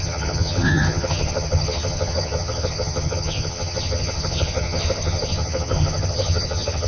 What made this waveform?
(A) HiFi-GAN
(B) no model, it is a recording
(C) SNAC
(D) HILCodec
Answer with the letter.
A